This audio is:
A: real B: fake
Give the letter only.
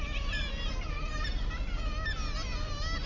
A